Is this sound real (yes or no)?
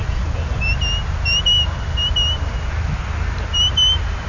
yes